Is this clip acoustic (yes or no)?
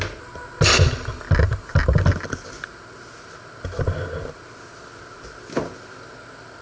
yes